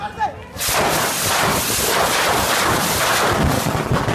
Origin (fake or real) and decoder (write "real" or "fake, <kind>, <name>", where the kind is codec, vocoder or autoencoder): real